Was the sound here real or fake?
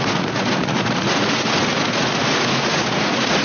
fake